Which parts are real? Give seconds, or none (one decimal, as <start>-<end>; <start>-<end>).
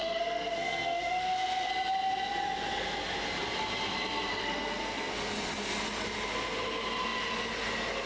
1.7-4.3; 5.1-8.1